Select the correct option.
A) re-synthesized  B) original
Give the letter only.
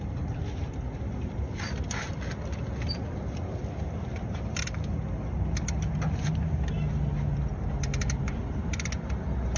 B